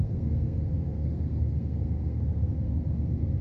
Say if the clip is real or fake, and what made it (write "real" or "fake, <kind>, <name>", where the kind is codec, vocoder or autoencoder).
fake, codec, SNAC